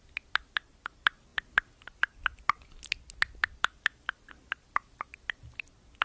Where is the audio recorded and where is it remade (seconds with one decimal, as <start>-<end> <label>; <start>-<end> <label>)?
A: 0.0-6.0 recorded